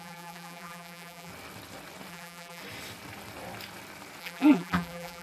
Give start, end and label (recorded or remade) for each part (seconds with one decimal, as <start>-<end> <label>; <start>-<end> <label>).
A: 0.0-1.3 remade; 1.3-2.1 recorded; 2.1-2.6 remade; 2.6-4.2 recorded; 4.2-5.2 remade